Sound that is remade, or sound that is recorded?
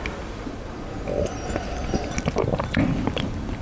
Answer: remade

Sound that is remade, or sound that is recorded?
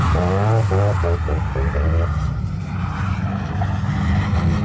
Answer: recorded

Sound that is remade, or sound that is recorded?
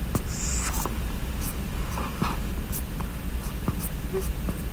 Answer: recorded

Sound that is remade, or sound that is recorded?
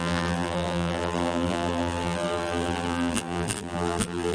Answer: remade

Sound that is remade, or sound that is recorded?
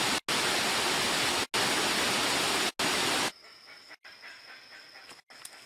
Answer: recorded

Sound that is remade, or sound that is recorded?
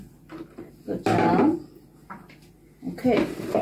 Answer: recorded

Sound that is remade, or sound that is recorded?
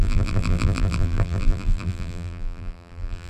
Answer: remade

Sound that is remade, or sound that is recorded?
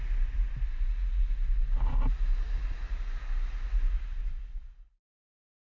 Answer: recorded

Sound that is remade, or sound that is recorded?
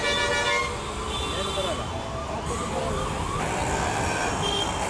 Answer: recorded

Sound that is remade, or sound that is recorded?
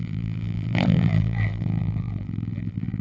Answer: remade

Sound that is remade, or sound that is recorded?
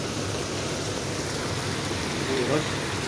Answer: recorded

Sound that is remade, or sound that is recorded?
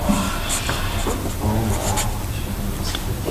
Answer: recorded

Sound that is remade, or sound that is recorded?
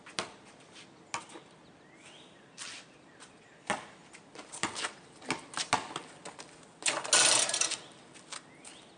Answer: recorded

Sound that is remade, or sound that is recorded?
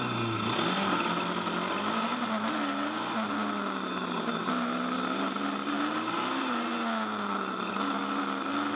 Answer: recorded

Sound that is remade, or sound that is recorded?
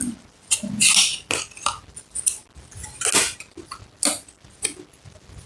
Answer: recorded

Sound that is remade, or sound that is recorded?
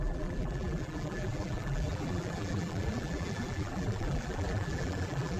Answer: remade